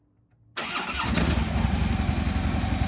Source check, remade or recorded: recorded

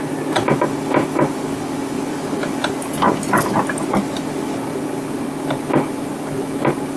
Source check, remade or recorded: recorded